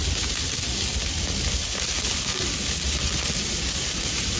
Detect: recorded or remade recorded